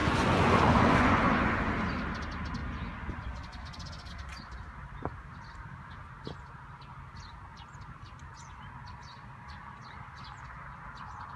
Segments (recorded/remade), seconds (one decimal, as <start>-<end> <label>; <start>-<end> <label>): 0.0-1.7 remade; 1.7-2.6 recorded; 2.6-4.1 remade; 4.1-11.4 recorded